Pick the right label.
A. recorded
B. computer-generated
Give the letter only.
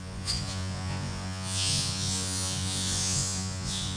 B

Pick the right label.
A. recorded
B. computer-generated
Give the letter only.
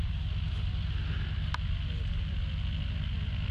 A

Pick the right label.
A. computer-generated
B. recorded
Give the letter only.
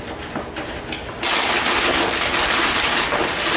B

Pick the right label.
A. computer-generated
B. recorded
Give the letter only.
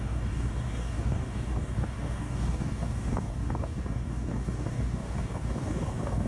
A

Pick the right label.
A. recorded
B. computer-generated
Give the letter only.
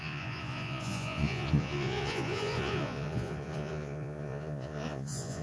B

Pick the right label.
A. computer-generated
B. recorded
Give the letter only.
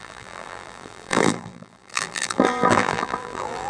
A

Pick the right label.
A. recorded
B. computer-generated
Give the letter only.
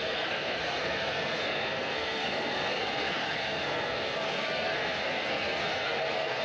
B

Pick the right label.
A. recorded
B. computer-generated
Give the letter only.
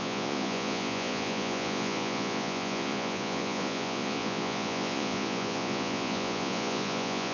B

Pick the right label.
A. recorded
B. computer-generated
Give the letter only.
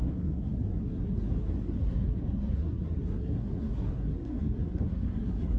B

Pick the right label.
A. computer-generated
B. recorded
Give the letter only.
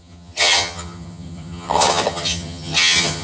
A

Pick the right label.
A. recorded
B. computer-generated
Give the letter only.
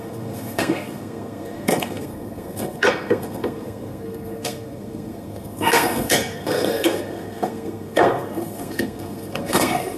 B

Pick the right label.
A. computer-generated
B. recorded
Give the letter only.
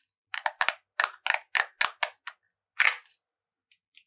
B